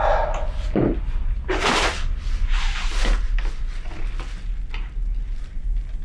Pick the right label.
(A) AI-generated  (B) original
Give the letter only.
B